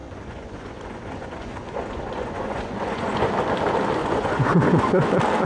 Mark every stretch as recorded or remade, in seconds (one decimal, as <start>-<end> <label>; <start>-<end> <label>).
0.0-3.3 remade; 3.3-4.0 recorded; 4.0-5.1 remade; 5.1-5.5 recorded